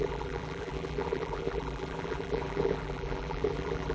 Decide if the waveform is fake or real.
fake